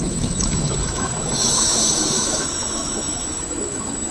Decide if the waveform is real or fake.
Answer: fake